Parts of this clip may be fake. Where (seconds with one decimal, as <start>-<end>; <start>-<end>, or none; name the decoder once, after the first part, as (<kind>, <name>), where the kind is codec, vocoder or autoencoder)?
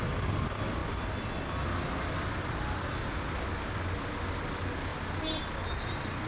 4.9-5.4 (vocoder, BigVGAN v2)